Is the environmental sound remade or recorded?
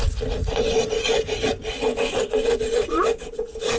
remade